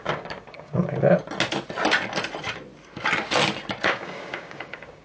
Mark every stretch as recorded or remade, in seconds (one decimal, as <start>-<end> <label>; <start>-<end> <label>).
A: 0.0-0.8 remade; 0.8-3.8 recorded; 3.8-5.0 remade